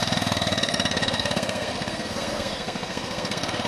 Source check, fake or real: fake